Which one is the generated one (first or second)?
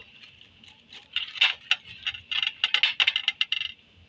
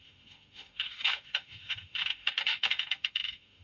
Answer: second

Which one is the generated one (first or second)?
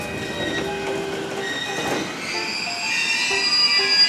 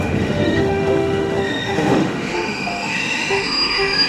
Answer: second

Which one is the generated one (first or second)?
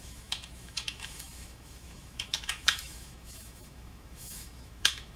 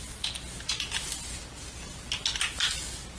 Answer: first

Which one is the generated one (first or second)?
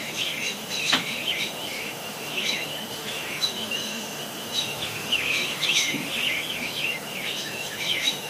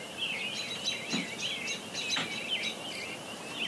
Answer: first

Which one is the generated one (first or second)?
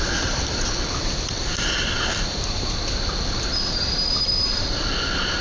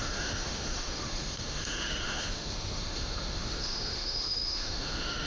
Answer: second